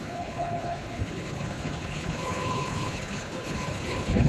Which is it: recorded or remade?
remade